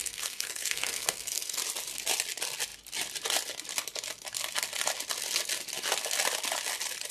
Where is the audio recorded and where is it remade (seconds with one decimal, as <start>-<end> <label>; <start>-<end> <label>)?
0.0-1.6 remade; 1.6-7.1 recorded